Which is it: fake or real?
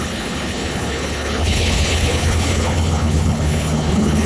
fake